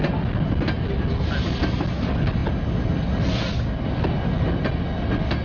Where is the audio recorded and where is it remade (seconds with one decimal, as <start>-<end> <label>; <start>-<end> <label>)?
0.0-5.4 recorded